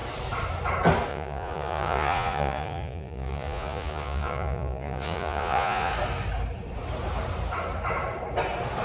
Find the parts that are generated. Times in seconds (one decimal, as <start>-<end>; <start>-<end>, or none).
1.1-5.9